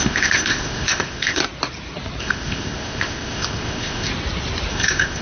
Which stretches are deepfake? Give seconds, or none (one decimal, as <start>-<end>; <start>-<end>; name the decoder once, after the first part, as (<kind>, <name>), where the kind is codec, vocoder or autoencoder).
0.0-1.4 (codec, ZipCodec); 2.2-4.1; 4.7-5.2